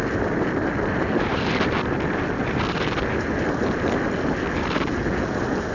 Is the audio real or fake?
real